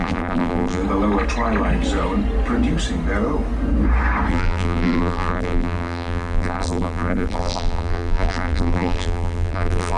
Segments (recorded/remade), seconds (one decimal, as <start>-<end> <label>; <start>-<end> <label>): 0.0-0.8 remade; 0.8-4.3 recorded; 4.3-10.0 remade